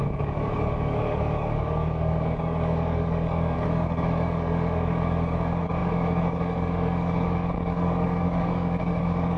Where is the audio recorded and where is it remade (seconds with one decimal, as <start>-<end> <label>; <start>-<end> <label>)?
0.0-9.4 remade